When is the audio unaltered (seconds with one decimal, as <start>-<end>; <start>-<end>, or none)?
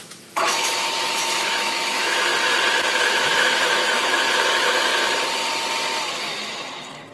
2.3-2.8; 4.9-6.2